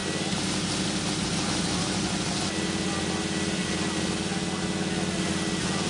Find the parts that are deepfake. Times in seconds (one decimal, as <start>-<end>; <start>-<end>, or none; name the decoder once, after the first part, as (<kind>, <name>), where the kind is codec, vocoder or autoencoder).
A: none